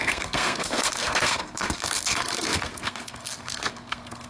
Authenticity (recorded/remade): remade